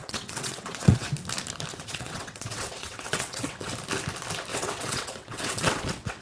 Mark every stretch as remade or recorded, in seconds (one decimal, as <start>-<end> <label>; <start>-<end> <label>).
0.0-1.1 remade; 1.1-1.7 recorded; 1.7-3.7 remade; 3.7-4.5 recorded; 4.5-6.2 remade